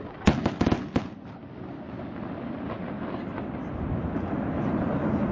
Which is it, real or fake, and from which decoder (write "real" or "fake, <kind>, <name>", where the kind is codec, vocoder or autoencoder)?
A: real